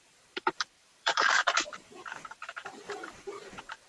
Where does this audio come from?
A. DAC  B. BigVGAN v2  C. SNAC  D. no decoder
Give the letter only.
B